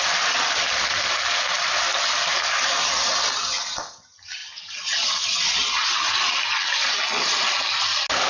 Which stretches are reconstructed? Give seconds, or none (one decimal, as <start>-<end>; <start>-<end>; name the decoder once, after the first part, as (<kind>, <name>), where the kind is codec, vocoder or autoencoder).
none